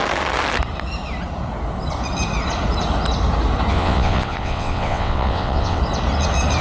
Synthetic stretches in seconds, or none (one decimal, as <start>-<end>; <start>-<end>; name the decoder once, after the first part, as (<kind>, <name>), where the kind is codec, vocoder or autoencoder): 3.7-5.8 (vocoder, WaveNeXt)